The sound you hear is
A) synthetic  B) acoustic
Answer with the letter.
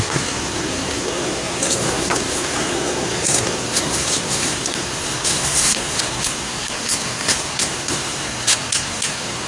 A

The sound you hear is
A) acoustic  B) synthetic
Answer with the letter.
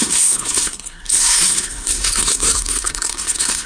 B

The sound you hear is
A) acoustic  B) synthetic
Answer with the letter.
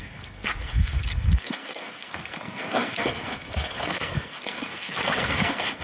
B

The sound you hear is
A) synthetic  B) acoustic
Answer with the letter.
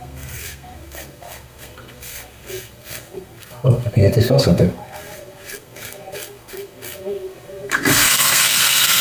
A